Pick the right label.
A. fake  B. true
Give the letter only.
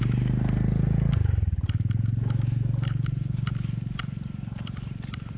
B